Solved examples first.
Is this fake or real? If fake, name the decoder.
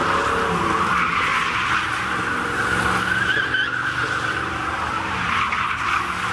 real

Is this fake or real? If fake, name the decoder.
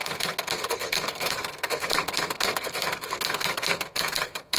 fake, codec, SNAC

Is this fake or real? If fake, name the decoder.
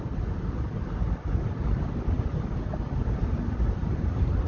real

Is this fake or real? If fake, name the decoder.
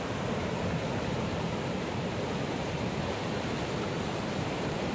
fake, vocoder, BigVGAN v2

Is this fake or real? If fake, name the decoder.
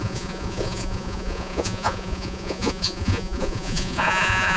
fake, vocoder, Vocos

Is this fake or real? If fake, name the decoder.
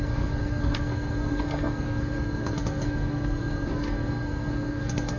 fake, codec, SNAC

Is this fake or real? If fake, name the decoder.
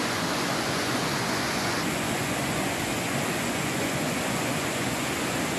fake, vocoder, Vocos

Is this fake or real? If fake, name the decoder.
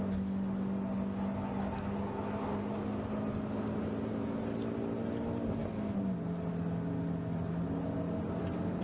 real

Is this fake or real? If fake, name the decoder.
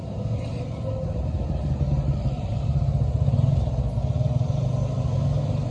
real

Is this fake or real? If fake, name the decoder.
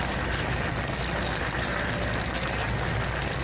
real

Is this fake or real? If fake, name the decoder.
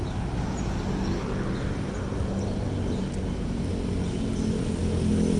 real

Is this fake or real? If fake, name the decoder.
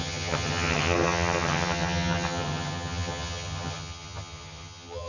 fake, vocoder, HiFi-GAN